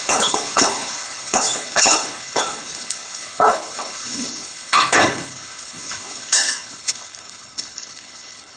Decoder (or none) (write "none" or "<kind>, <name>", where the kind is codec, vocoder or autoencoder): codec, HILCodec